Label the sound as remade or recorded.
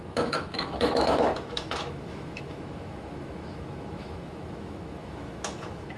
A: remade